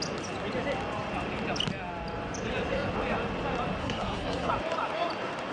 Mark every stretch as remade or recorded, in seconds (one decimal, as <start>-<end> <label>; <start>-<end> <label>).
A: 0.0-3.8 recorded; 3.8-4.5 remade; 4.5-5.5 recorded